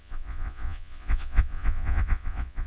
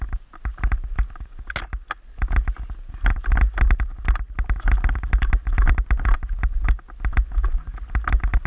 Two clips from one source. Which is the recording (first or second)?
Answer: second